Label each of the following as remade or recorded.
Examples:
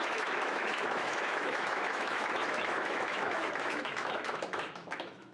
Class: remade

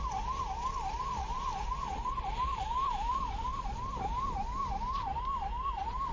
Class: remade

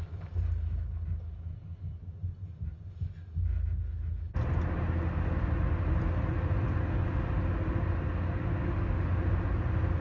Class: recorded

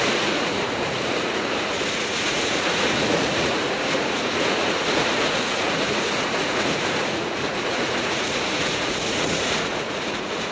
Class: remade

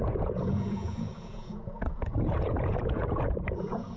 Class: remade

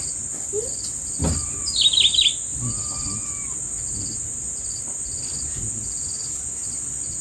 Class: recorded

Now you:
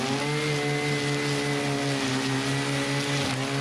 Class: recorded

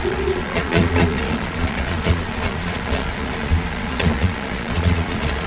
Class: remade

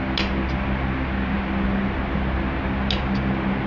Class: recorded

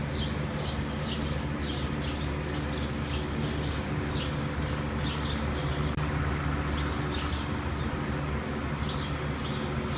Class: recorded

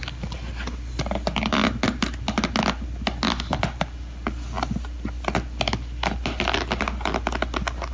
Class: recorded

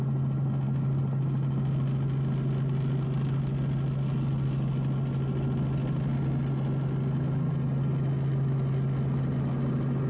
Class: recorded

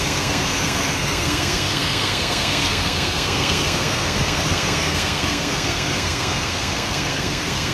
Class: remade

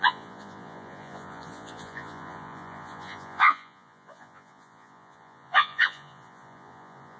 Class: remade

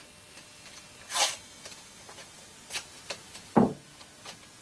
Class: recorded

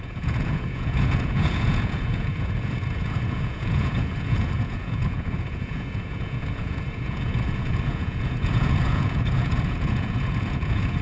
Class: remade